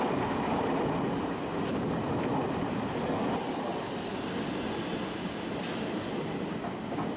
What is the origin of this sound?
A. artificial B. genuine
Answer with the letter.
B